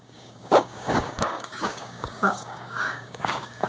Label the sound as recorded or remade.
remade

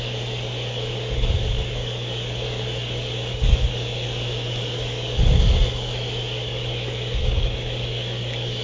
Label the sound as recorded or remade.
remade